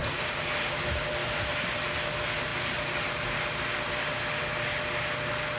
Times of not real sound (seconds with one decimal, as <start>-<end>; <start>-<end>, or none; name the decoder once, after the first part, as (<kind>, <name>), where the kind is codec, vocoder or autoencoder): none